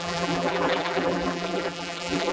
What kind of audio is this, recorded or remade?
remade